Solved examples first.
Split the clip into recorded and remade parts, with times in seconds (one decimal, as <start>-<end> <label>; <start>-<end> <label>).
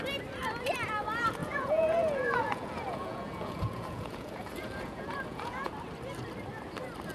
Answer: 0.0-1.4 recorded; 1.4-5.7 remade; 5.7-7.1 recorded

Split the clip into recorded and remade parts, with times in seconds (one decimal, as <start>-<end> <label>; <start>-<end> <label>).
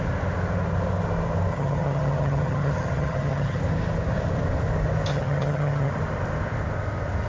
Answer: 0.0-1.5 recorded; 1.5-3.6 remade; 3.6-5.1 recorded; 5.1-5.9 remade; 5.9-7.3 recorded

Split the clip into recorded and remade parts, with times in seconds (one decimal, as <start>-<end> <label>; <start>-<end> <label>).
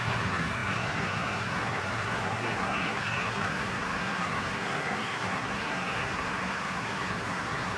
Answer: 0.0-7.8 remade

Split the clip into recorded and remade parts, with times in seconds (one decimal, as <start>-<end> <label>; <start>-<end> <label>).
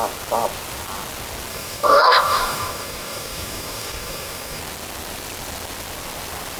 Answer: 0.0-1.5 recorded; 1.5-4.6 remade; 4.6-6.6 recorded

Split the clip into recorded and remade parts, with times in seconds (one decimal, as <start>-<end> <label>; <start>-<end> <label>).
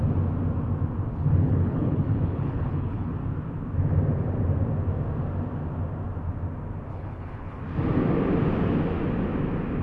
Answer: 0.0-1.1 recorded; 1.1-3.1 remade; 3.1-6.9 recorded; 6.9-7.6 remade; 7.6-9.8 recorded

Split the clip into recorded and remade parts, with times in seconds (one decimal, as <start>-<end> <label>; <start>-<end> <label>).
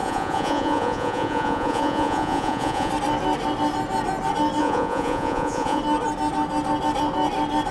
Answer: 0.0-2.9 remade; 2.9-4.6 recorded; 4.6-5.8 remade; 5.8-7.7 recorded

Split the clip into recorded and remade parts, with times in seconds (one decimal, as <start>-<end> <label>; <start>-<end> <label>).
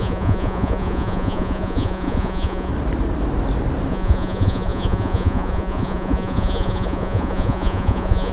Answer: 0.0-2.7 remade; 2.7-3.9 recorded; 3.9-8.3 remade